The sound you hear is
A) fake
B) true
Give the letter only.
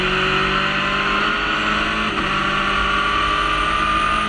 B